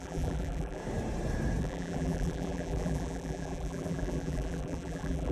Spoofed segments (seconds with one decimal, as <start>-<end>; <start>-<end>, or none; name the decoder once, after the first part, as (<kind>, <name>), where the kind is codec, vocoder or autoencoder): 0.0-0.8 (vocoder, BigVGAN v2); 1.6-5.3